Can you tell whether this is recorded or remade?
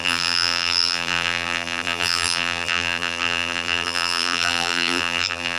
remade